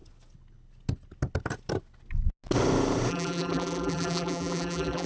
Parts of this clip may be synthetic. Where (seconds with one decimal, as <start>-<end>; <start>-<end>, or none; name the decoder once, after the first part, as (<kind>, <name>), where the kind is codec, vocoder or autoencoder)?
3.1-5.1 (vocoder, BigVGAN v2)